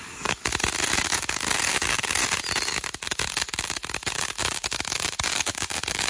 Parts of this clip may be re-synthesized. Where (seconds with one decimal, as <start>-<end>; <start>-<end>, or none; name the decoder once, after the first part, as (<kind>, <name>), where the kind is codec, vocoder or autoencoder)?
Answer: 0.0-0.5 (codec, DAC); 1.0-2.2; 2.7-6.1